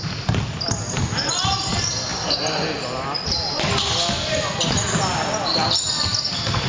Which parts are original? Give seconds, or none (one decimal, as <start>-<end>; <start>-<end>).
0.0-2.1; 3.7-5.6; 6.3-6.7